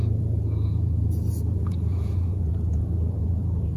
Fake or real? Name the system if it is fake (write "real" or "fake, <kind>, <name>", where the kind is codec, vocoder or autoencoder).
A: fake, vocoder, Vocos